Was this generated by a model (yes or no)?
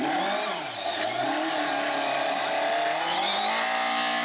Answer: no